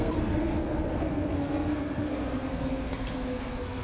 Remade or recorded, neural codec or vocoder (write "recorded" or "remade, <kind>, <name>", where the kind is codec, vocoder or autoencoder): remade, codec, SNAC